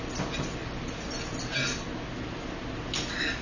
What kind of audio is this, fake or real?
real